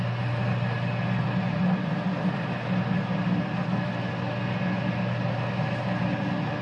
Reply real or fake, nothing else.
real